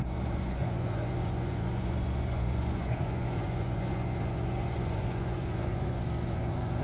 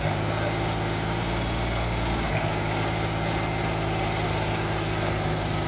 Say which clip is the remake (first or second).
first